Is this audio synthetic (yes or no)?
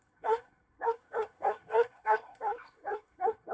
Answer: yes